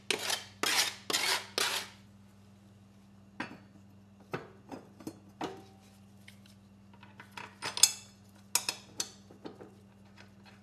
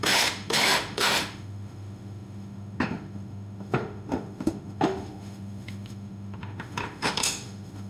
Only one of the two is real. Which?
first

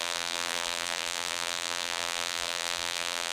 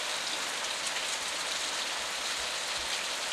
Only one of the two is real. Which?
second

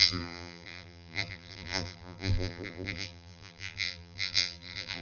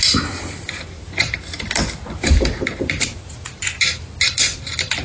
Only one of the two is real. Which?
second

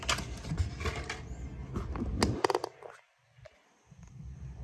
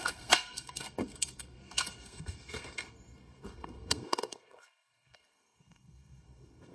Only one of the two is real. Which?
first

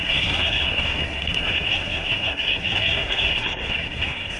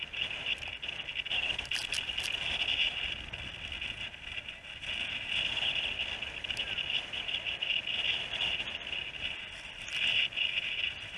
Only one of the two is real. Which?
second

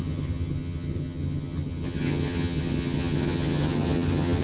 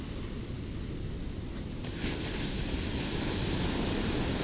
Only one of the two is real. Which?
second